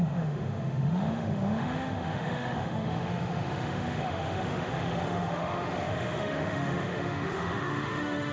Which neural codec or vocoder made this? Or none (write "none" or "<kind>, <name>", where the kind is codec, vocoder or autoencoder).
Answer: autoencoder, DAC-VAE